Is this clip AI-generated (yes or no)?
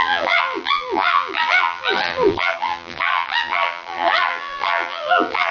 yes